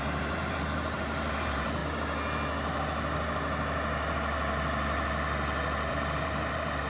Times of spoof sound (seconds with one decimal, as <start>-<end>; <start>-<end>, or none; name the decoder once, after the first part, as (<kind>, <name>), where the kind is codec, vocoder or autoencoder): 0.0-1.8 (vocoder, BigVGAN v2); 5.9-6.9